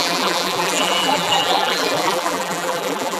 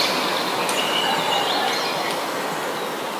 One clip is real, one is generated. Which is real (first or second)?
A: second